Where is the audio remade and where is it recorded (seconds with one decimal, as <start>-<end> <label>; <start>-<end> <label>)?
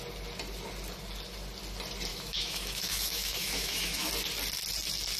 0.0-2.1 recorded; 2.1-4.1 remade; 4.1-5.2 recorded